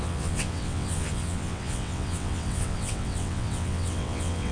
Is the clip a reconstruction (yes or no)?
yes